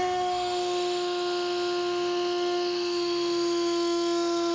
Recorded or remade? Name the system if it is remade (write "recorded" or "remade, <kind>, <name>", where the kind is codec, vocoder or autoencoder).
remade, autoencoder, DAC-VAE